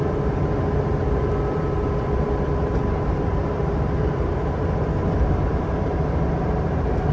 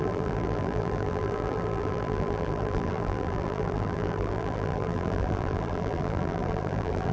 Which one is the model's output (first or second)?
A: second